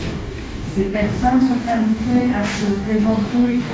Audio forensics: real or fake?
fake